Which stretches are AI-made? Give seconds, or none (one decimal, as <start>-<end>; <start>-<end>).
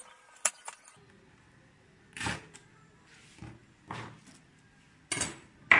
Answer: none